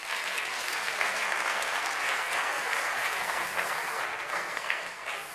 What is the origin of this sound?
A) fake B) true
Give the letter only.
A